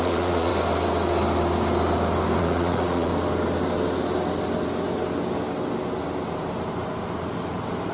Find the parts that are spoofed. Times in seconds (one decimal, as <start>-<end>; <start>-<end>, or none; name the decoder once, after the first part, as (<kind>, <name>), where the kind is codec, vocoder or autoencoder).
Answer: 0.0-0.5 (vocoder, Vocos); 2.4-3.1